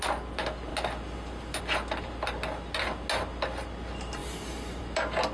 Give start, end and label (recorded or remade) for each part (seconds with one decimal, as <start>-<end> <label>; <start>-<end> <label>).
0.0-5.3 recorded